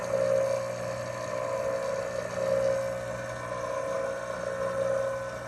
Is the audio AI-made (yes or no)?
no